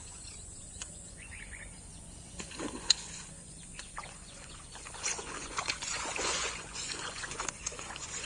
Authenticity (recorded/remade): remade